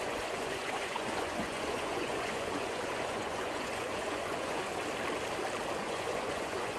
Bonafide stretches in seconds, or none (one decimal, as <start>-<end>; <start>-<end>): 4.7-5.8